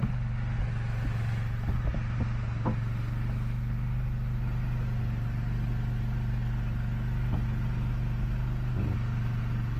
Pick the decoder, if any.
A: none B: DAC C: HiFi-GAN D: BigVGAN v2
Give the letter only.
A